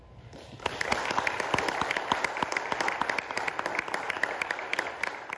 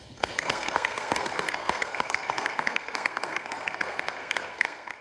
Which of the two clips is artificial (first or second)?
second